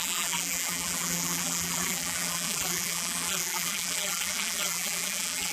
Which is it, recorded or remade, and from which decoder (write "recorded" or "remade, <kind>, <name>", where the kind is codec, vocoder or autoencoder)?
remade, vocoder, BigVGAN v2